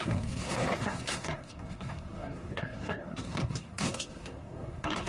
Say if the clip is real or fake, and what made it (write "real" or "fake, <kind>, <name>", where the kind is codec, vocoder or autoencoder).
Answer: fake, codec, SNAC